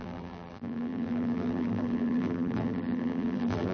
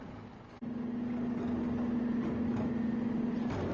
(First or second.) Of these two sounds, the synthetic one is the first